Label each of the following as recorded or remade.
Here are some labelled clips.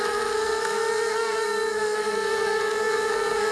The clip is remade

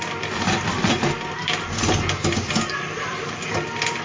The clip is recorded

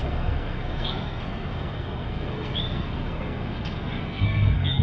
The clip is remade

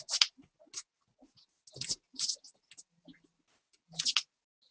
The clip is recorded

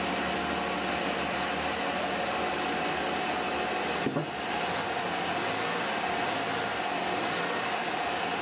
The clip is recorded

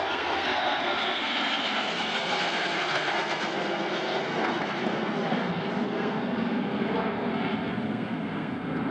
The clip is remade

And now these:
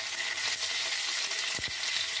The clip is recorded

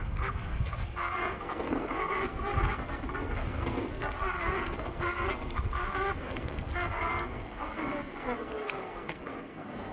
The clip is remade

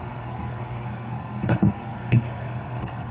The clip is remade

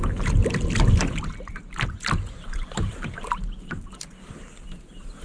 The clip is recorded